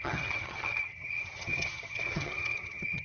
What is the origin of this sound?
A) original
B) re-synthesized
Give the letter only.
B